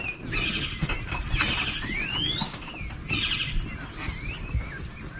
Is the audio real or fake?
real